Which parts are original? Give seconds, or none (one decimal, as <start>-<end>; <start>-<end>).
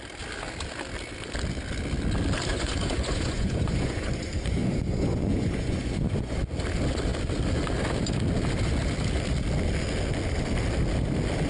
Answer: 0.0-2.5; 6.4-11.5